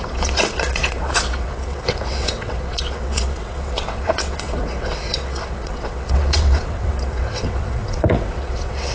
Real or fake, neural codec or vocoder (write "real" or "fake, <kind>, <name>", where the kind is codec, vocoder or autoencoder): fake, vocoder, WaveNeXt